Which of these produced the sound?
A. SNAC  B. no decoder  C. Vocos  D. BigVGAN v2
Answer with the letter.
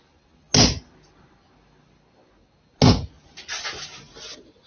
B